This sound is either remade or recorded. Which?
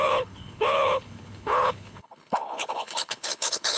remade